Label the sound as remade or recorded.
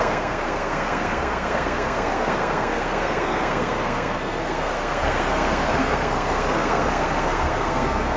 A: remade